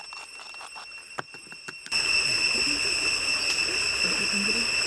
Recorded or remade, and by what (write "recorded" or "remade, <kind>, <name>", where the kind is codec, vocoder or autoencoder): recorded